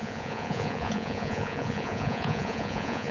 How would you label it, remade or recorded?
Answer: remade